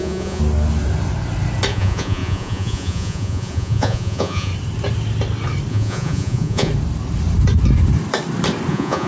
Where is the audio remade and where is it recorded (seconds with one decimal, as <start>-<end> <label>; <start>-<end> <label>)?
0.0-0.4 remade; 0.4-1.7 recorded; 1.7-4.5 remade; 4.5-5.7 recorded; 5.7-6.7 remade; 6.7-8.7 recorded; 8.7-9.1 remade